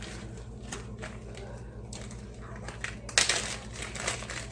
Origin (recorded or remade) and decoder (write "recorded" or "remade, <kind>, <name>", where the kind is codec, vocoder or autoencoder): recorded